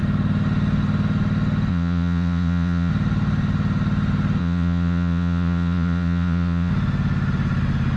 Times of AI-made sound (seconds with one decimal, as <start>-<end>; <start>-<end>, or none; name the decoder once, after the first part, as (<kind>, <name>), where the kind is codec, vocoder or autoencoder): 1.7-2.9 (vocoder, Vocos); 4.4-6.7